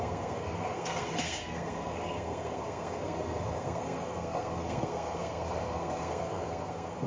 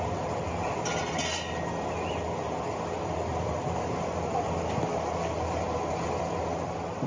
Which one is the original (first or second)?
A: second